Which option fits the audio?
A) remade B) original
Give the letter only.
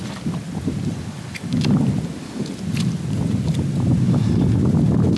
B